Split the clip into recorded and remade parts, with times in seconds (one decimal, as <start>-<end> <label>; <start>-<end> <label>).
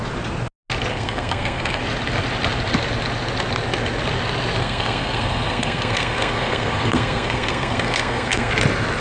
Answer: 0.0-0.9 recorded; 0.9-1.8 remade; 1.8-4.6 recorded; 4.6-8.5 remade; 8.5-9.0 recorded